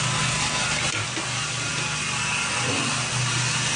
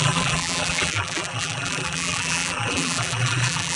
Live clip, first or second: first